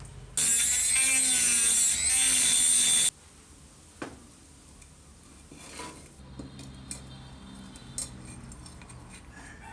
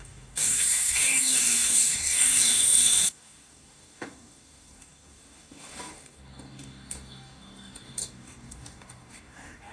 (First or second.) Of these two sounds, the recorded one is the first